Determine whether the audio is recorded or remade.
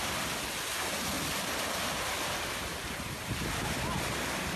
recorded